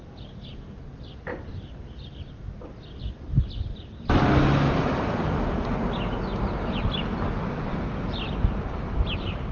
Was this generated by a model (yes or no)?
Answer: no